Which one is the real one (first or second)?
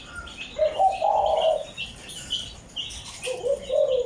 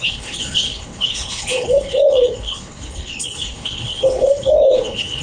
first